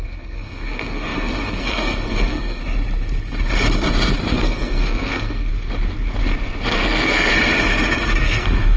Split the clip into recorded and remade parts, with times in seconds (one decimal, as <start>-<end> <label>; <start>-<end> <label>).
0.0-2.6 remade; 2.6-4.3 recorded; 4.3-5.5 remade; 5.5-6.7 recorded; 6.7-7.3 remade; 7.3-8.2 recorded; 8.2-8.8 remade